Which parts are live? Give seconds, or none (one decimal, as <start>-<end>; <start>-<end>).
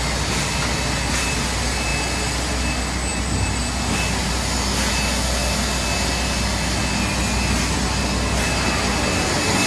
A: 0.0-9.7